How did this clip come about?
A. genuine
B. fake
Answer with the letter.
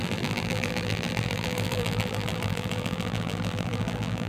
B